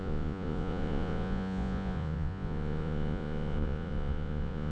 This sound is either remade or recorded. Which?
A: remade